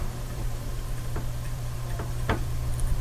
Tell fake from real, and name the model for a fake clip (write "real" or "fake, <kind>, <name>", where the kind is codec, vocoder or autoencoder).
fake, vocoder, BigVGAN v2